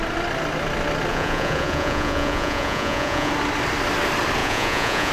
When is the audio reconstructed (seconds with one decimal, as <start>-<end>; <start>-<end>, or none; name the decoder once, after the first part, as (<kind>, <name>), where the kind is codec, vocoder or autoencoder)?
1.1-3.3 (vocoder, Vocos); 4.4-5.1